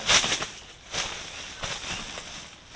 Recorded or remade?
recorded